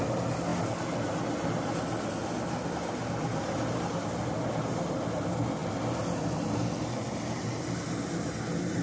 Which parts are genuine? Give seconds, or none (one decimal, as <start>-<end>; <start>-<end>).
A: 0.0-8.8